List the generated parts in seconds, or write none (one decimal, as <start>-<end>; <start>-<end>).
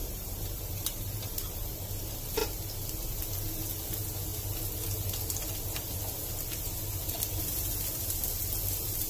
0.0-1.9